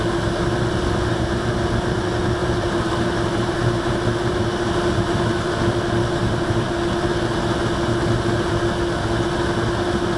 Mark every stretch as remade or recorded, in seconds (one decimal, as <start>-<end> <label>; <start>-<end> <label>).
0.0-1.1 recorded; 1.1-2.0 remade; 2.0-2.4 recorded; 2.4-5.5 remade; 5.5-6.0 recorded; 6.0-6.7 remade; 6.7-10.2 recorded